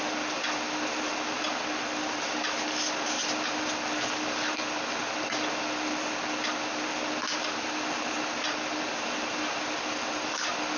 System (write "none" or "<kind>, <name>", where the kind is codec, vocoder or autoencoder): none